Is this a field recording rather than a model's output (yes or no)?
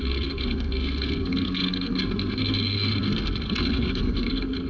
no